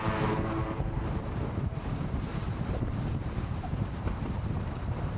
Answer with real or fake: fake